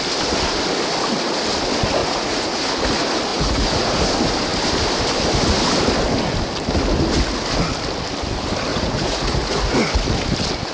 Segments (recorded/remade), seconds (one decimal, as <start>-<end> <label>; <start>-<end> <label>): 0.0-2.0 recorded; 2.0-2.6 remade; 2.6-3.3 recorded; 3.3-4.0 remade; 4.0-8.7 recorded; 8.7-9.6 remade; 9.6-10.7 recorded